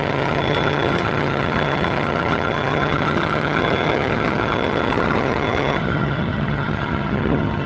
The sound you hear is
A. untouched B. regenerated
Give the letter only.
B